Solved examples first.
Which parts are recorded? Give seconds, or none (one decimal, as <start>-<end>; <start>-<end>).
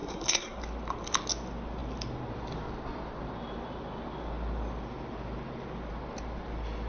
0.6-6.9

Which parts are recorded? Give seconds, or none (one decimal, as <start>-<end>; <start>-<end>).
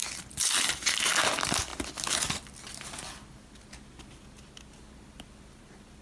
0.0-6.0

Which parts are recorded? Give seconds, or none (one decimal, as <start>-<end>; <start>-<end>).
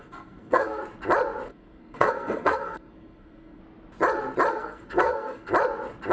0.8-1.5; 3.6-4.5; 5.5-6.1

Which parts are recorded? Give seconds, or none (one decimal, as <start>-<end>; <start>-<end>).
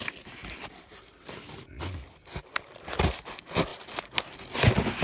0.0-5.0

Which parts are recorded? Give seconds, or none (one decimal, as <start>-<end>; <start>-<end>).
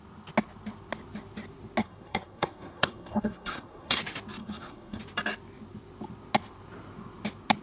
0.0-1.8; 4.0-4.4; 5.0-7.6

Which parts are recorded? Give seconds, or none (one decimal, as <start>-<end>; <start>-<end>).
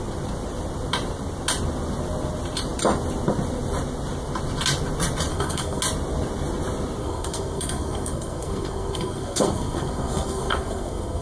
0.0-5.3; 5.8-7.0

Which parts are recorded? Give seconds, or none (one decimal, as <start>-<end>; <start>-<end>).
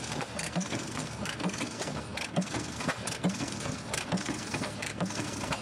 none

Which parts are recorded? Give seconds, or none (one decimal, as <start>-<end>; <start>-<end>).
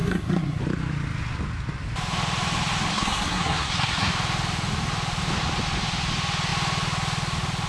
0.6-2.9; 4.1-7.7